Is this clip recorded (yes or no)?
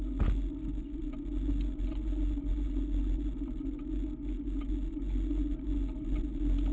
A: yes